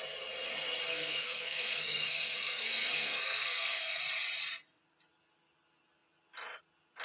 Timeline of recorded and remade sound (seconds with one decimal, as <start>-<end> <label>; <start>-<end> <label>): 0.0-0.9 recorded; 0.9-4.0 remade; 4.0-7.0 recorded